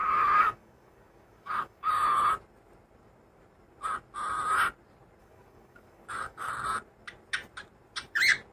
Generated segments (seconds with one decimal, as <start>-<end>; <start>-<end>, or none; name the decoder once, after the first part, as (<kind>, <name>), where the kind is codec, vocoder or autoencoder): 0.0-2.1 (codec, DAC); 5.2-6.5